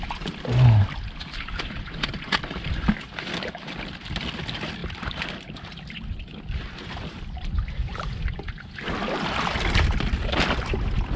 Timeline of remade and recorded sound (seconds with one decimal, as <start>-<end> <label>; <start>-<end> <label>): 0.0-11.2 recorded